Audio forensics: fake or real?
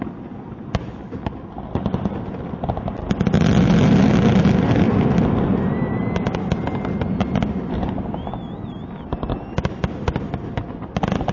real